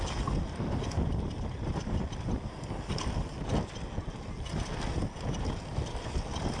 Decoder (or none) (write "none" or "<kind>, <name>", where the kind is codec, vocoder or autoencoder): none